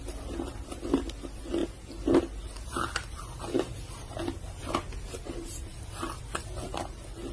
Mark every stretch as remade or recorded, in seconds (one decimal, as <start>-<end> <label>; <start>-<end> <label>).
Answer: 0.0-7.3 recorded